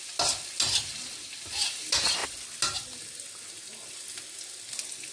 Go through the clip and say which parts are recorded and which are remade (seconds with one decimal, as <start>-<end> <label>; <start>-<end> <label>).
0.0-5.1 recorded